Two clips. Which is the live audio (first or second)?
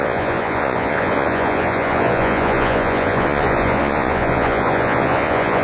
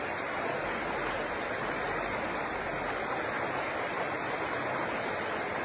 second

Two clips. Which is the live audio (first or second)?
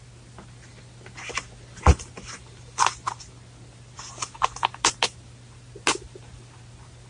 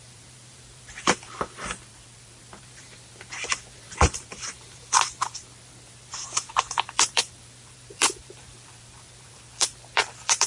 first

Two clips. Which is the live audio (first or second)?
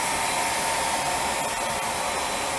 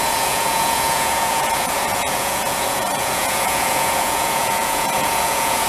first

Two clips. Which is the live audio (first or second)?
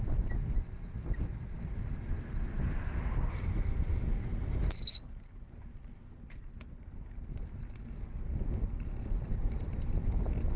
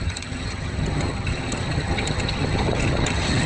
first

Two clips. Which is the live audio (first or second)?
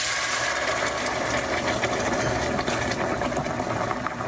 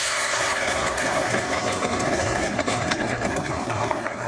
first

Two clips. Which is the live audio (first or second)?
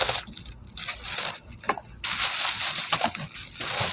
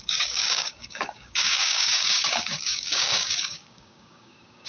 first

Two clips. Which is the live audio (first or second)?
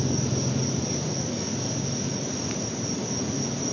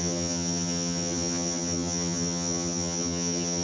first